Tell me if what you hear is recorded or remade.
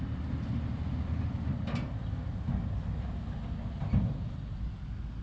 recorded